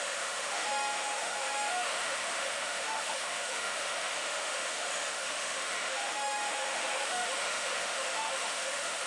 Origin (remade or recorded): remade